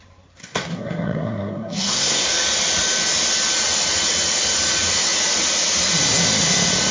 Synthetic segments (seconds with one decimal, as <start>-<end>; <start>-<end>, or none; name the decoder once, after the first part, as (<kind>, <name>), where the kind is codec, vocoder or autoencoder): 0.4-2.3 (codec, SNAC)